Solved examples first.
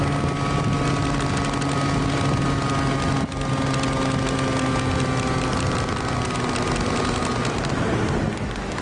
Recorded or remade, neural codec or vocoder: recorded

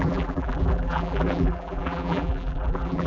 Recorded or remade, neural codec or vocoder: remade, vocoder, BigVGAN v2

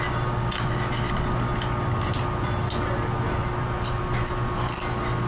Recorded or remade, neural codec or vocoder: recorded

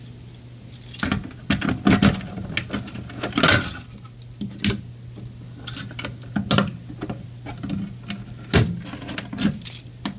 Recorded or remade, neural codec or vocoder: recorded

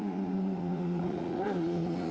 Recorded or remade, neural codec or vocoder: remade, vocoder, Vocos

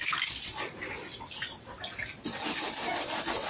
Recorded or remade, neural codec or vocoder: recorded